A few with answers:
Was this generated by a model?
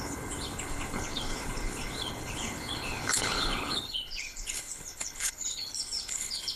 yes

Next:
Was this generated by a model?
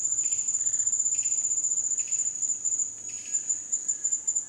no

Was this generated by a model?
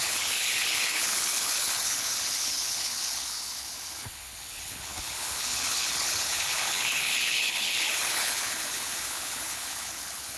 yes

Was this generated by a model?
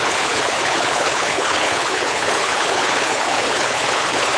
yes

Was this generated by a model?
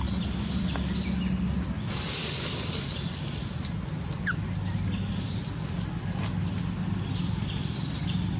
no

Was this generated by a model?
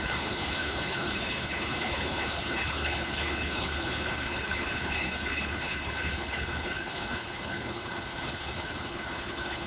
yes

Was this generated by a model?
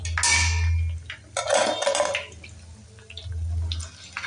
no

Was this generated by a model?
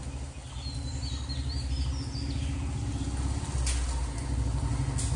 no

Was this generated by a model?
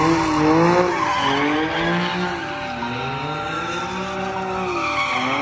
no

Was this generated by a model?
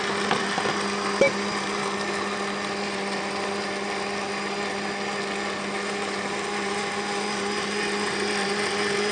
no